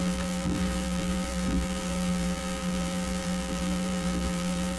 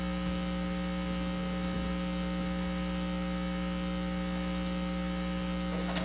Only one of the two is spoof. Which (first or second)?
first